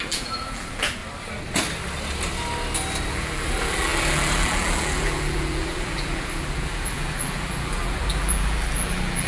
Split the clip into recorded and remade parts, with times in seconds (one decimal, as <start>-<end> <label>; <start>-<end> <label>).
0.0-1.0 remade; 1.0-3.1 recorded; 3.1-9.3 remade